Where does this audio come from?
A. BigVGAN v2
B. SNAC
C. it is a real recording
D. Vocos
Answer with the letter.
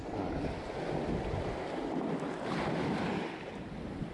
C